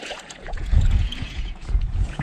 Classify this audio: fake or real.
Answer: fake